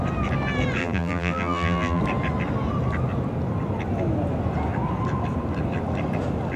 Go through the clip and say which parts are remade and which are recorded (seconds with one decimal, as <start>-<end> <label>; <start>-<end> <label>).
0.0-0.8 recorded; 0.8-2.0 remade; 2.0-6.6 recorded